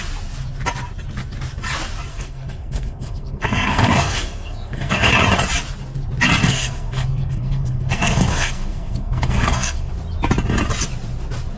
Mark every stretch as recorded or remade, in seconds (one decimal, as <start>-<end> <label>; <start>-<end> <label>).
0.0-2.1 recorded; 2.1-5.1 remade; 5.1-6.4 recorded; 6.4-9.9 remade; 9.9-11.6 recorded